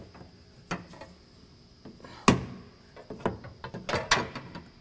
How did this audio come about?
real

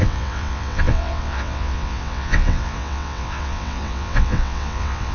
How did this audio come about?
fake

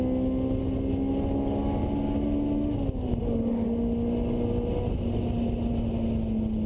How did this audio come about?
real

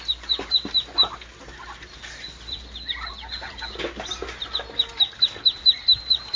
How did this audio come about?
real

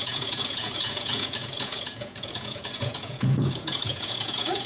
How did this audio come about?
fake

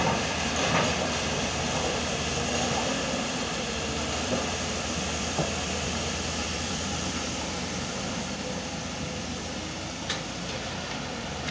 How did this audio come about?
fake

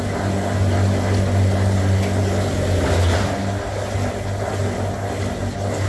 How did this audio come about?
real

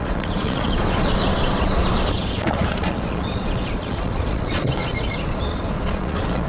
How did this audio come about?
fake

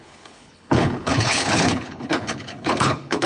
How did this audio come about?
fake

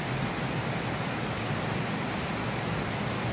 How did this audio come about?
real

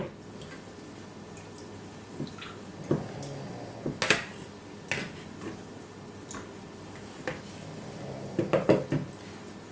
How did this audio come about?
real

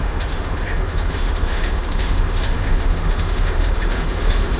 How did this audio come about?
fake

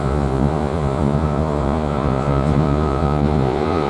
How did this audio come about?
fake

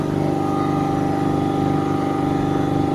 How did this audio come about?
real